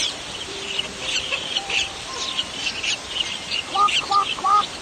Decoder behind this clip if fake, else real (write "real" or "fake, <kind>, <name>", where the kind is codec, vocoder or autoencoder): fake, vocoder, BigVGAN v2